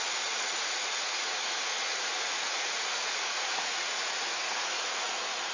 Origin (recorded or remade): remade